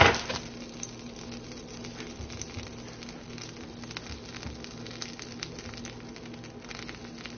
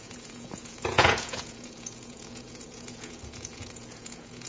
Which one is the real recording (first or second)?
first